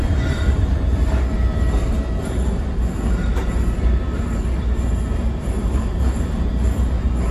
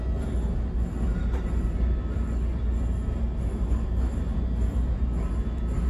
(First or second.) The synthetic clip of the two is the first